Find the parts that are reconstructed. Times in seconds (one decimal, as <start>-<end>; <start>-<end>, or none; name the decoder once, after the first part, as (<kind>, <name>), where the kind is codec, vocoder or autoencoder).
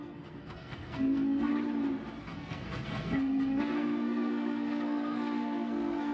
0.0-1.5 (codec, SNAC); 2.2-6.1